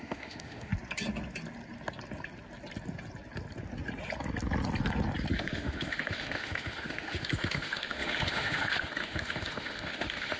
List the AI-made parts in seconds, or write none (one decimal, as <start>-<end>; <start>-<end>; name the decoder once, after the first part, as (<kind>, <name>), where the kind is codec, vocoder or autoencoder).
0.0-0.7 (autoencoder, DAC-VAE); 5.3-10.4